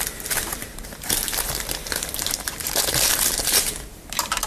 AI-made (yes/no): yes